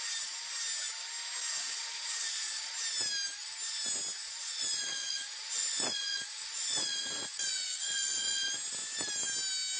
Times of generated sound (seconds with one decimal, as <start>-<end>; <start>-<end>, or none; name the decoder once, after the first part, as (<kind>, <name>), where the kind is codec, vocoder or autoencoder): 1.6-2.7 (vocoder, Vocos); 4.2-8.5